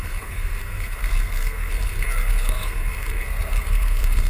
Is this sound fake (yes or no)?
yes